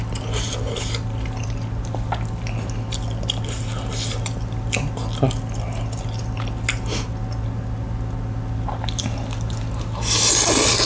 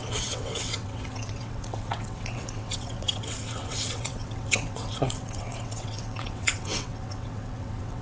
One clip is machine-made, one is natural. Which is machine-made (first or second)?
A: second